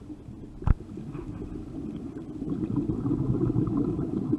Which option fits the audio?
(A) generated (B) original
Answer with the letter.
B